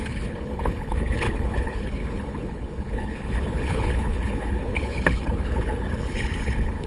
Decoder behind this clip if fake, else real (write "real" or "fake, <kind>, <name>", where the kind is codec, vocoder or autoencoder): fake, codec, HILCodec